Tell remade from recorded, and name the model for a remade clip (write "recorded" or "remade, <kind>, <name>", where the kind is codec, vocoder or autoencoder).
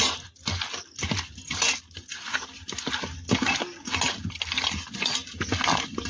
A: recorded